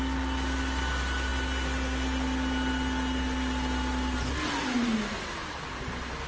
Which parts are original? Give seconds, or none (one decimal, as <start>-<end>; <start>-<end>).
0.0-6.3